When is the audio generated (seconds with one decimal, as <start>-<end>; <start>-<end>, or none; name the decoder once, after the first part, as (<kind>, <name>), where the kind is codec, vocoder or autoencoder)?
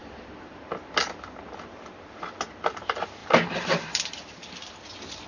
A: 0.0-1.0 (vocoder, BigVGAN v2); 3.2-4.7